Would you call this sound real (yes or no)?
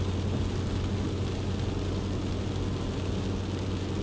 yes